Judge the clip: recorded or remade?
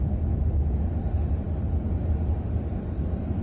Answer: recorded